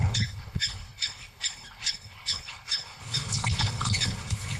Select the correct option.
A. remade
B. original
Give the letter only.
A